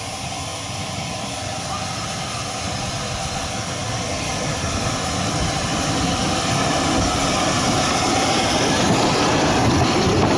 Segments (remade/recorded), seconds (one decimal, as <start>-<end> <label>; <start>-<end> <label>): 0.0-0.5 recorded; 0.5-1.6 remade; 1.6-3.8 recorded; 3.8-8.8 remade; 8.8-10.4 recorded